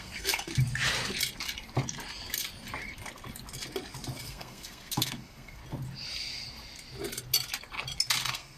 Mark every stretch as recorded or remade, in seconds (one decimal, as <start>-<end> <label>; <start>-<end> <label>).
0.0-0.5 remade; 0.5-4.2 recorded; 4.2-5.6 remade; 5.6-8.2 recorded; 8.2-8.6 remade

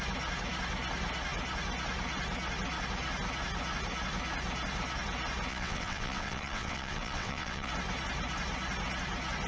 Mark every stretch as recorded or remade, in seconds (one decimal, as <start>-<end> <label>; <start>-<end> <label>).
0.0-5.5 recorded; 5.5-7.7 remade; 7.7-9.5 recorded

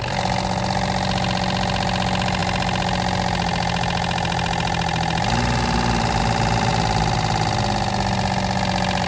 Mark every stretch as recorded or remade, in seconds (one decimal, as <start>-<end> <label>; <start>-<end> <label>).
0.0-9.1 recorded

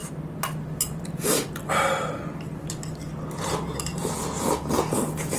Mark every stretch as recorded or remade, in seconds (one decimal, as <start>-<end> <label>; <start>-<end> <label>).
0.0-5.4 recorded

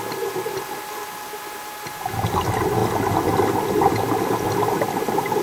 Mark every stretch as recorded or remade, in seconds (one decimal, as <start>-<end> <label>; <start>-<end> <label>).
0.0-5.4 recorded

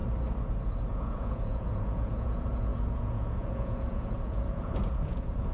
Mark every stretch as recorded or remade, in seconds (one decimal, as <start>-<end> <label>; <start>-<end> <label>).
0.0-0.9 recorded; 0.9-5.5 remade

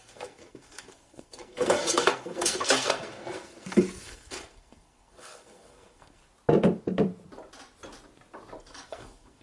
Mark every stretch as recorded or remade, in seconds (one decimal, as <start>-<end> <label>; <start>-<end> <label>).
0.0-6.2 remade; 6.2-8.6 recorded; 8.6-9.4 remade

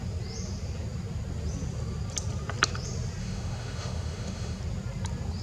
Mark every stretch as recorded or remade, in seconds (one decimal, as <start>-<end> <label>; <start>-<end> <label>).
0.0-3.2 recorded; 3.2-4.6 remade; 4.6-5.4 recorded